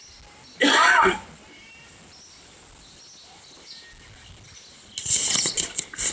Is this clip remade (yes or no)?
no